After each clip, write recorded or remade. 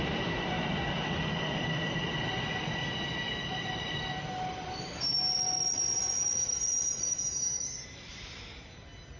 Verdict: recorded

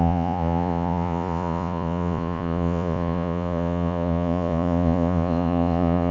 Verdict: remade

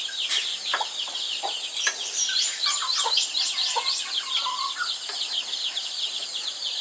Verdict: recorded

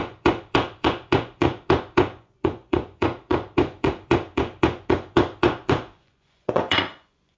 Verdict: remade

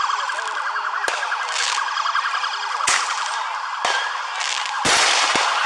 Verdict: recorded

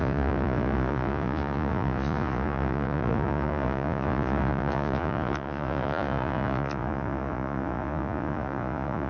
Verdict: remade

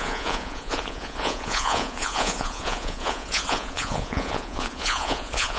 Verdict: remade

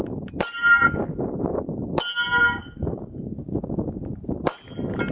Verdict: recorded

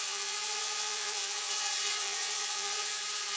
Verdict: remade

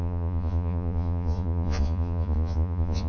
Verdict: remade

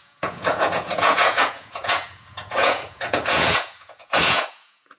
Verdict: remade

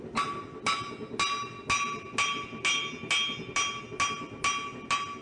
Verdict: recorded